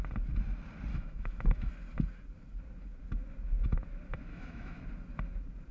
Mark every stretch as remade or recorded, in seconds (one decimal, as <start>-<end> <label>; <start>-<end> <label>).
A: 0.0-0.9 recorded; 0.9-1.7 remade; 1.7-4.3 recorded; 4.3-4.8 remade; 4.8-5.7 recorded